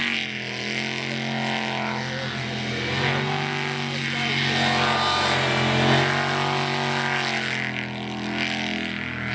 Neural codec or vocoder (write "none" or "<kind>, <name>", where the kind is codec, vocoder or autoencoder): none